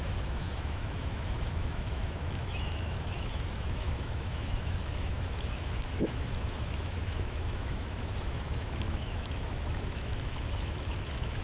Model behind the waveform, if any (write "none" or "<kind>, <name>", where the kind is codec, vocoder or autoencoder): autoencoder, DAC-VAE